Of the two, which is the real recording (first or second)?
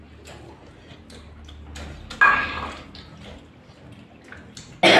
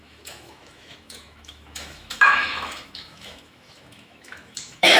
first